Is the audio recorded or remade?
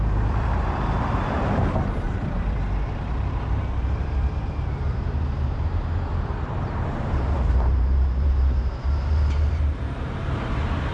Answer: remade